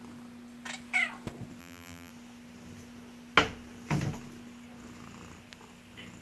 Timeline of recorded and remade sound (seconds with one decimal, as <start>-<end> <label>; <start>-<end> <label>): 0.0-1.6 recorded; 1.6-2.1 remade; 2.1-6.2 recorded